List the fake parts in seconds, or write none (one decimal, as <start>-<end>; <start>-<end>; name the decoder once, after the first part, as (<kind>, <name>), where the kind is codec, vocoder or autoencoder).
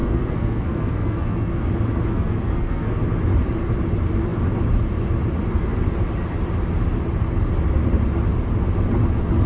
0.0-1.7 (codec, SNAC); 2.1-3.0